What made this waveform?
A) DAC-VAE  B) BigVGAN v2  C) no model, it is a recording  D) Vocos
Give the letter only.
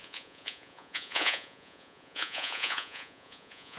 D